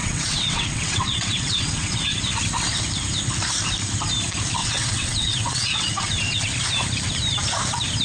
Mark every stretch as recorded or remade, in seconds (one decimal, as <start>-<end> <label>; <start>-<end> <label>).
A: 0.0-2.2 remade; 2.2-4.6 recorded; 4.6-6.4 remade; 6.4-8.0 recorded